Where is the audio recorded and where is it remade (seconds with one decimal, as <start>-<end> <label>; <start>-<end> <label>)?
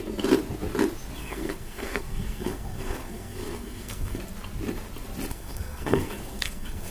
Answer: 0.0-1.2 recorded; 1.2-4.2 remade; 4.2-5.3 recorded; 5.3-6.9 remade